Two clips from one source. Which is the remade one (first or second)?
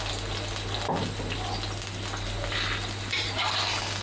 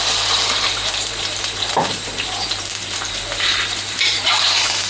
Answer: second